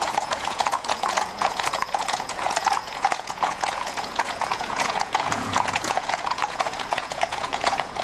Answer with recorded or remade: remade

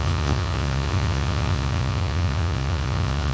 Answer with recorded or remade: remade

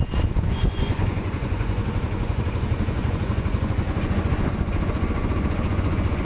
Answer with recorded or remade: remade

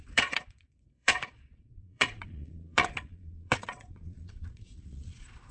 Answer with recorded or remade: remade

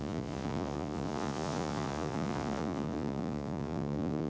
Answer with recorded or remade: remade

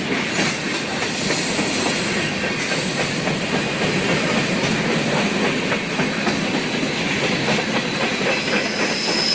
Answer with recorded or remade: recorded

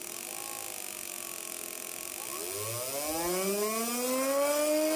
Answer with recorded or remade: recorded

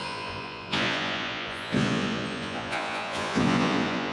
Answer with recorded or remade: remade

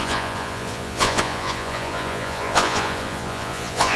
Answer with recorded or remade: remade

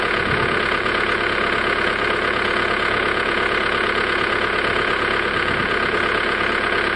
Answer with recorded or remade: remade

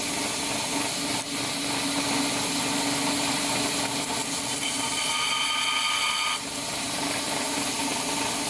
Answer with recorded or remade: recorded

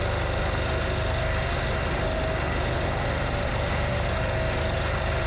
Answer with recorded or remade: recorded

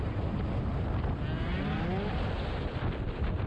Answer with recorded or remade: recorded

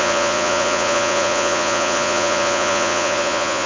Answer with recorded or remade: remade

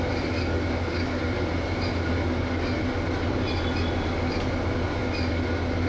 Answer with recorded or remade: recorded